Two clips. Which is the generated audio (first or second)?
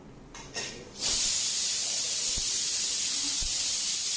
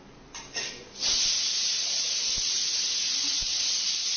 first